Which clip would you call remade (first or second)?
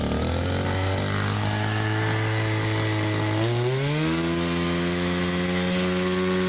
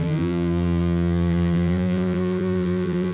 second